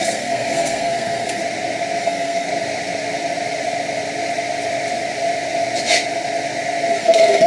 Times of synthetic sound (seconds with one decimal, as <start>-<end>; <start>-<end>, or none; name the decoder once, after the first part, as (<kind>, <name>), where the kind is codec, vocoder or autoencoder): 0.0-1.4 (codec, SNAC); 2.0-2.5; 7.0-7.5

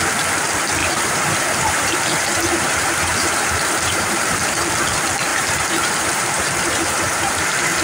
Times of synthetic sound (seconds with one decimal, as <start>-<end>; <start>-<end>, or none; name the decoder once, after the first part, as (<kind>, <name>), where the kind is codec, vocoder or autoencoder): 0.8-4.7 (vocoder, BigVGAN v2); 5.3-7.8

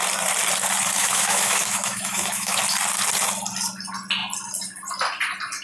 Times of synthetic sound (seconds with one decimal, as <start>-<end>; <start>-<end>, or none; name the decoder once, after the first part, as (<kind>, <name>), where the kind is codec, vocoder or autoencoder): 1.0-2.6 (autoencoder, DAC-VAE)

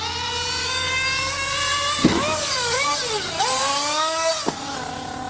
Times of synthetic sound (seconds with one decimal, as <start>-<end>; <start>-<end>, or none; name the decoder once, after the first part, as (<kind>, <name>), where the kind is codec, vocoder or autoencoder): 0.6-1.5 (codec, DAC); 2.0-2.9; 3.7-4.3

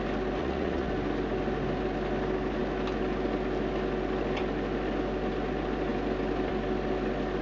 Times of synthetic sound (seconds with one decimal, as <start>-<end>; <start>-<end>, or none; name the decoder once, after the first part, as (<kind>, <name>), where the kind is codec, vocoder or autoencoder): 0.4-0.9 (vocoder, Vocos)